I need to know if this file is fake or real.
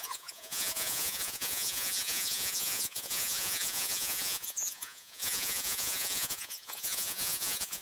fake